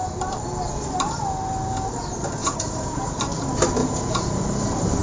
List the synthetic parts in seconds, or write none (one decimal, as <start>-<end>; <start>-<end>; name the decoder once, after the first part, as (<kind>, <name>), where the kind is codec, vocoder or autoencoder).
2.4-3.0 (vocoder, Vocos); 3.8-4.4